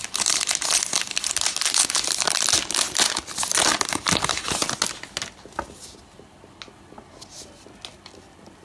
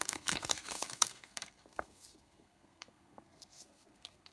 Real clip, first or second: first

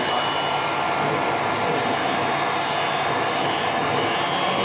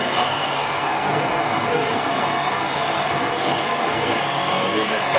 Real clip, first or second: first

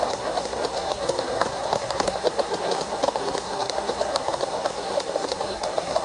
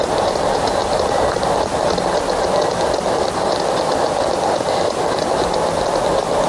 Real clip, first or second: second